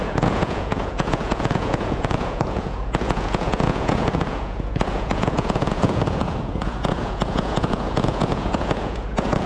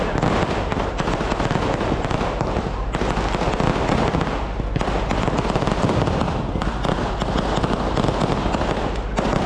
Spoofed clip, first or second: first